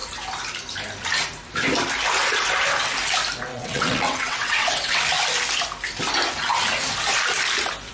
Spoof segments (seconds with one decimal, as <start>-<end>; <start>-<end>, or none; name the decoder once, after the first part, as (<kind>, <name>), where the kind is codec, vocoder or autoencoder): 3.5-5.0 (vocoder, WaveNeXt)